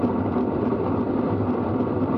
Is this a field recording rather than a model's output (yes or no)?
yes